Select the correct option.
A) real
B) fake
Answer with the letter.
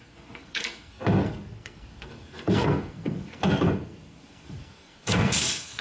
B